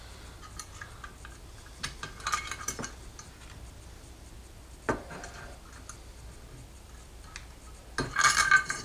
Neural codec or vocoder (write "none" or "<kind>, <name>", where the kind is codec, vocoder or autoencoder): none